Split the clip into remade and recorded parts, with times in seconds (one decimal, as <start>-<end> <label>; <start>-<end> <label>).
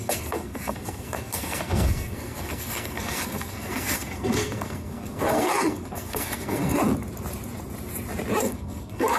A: 0.0-6.8 remade; 6.8-8.4 recorded; 8.4-9.2 remade